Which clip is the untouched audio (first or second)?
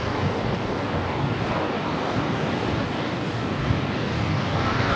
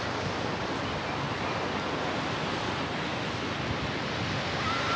second